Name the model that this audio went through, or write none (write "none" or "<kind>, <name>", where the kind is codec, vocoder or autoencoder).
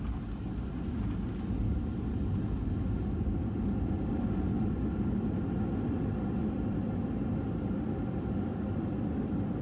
none